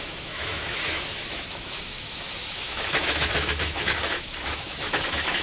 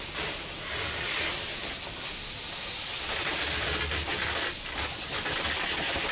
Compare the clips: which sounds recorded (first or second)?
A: second